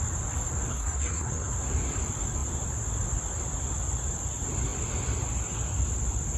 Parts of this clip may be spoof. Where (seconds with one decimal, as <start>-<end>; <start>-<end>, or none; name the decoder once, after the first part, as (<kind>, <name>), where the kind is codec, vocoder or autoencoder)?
0.7-1.5 (codec, SNAC)